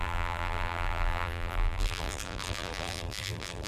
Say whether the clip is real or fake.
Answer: fake